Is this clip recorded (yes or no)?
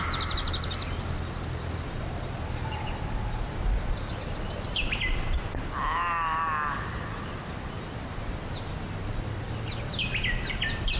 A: yes